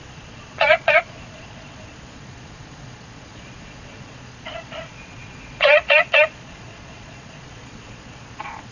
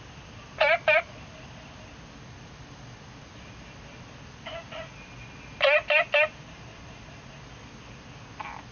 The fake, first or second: first